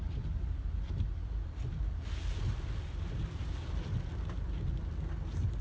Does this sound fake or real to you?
real